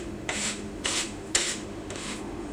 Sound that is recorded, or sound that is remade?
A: remade